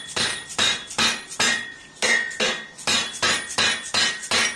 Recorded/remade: recorded